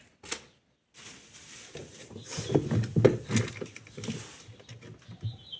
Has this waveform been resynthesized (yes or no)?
no